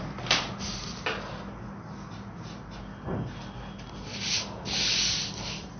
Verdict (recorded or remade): recorded